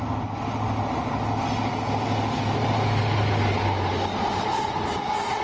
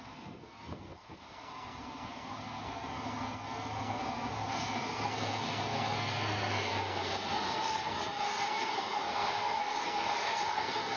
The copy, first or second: second